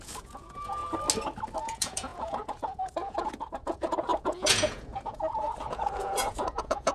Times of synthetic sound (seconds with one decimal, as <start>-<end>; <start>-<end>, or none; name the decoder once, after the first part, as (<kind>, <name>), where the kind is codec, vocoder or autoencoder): 0.0-0.8 (vocoder, Vocos); 1.6-6.9